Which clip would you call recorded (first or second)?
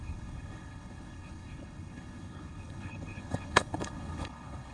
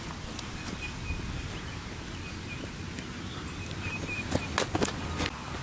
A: second